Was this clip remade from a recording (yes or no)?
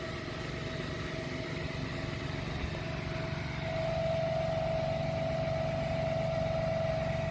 no